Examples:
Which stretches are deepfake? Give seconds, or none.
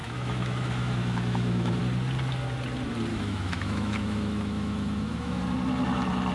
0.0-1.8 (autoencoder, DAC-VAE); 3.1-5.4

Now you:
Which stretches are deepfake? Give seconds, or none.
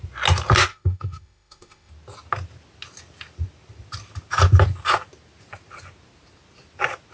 0.7-1.9 (autoencoder, DAC-VAE)